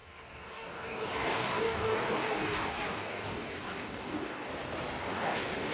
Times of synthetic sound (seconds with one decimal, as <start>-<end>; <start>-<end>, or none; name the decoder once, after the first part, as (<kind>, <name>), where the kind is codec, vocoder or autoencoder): 0.0-4.5 (codec, DAC); 5.1-5.7

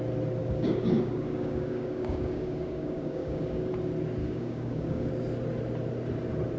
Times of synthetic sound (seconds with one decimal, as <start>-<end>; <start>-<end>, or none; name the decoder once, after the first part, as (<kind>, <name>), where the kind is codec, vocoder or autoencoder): 0.4-3.7 (codec, DAC); 4.2-5.1

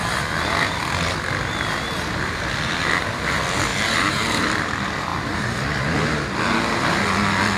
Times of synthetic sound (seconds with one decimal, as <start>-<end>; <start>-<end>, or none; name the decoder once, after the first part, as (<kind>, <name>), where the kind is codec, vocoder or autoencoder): none

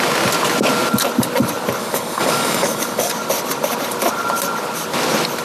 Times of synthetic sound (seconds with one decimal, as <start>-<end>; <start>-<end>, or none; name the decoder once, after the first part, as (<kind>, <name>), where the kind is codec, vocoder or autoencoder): 1.8-3.1 (codec, DAC)

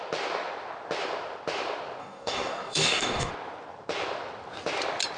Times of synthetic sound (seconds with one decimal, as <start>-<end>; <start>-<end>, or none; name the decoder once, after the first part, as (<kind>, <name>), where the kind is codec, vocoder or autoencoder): 2.0-3.3 (codec, DAC)

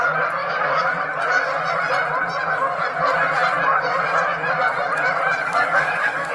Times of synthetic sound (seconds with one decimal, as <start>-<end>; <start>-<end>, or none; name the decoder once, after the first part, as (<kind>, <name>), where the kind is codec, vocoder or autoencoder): 0.4-0.9 (codec, DAC); 5.4-6.3

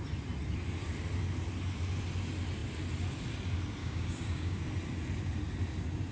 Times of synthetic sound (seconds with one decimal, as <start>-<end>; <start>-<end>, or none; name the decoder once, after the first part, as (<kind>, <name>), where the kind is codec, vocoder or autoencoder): 3.8-4.6 (codec, DAC)

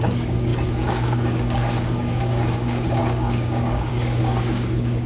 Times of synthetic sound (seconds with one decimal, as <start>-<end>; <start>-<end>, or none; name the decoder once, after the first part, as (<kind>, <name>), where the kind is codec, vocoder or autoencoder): 0.0-5.1 (codec, DAC)